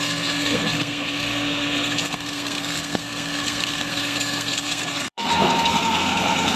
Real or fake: fake